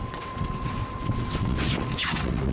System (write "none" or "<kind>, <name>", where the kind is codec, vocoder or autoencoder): vocoder, WaveNeXt